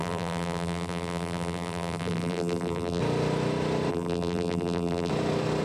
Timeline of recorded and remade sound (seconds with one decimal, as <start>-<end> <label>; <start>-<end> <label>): 0.0-3.0 remade; 3.0-3.9 recorded; 3.9-5.1 remade; 5.1-5.6 recorded